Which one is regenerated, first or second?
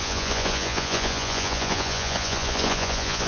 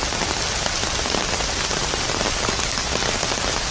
first